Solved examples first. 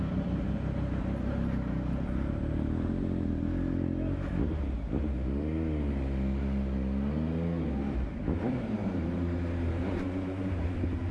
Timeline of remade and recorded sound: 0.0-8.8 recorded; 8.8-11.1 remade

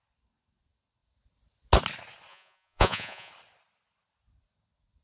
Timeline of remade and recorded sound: 0.0-2.3 recorded; 2.3-3.3 remade; 3.3-5.0 recorded

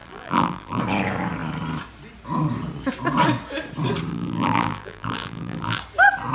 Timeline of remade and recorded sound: 0.0-0.8 remade; 0.8-4.1 recorded; 4.1-5.8 remade; 5.8-6.3 recorded

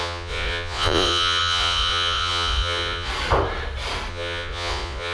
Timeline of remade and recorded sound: 0.0-3.1 remade; 3.1-4.1 recorded; 4.1-5.1 remade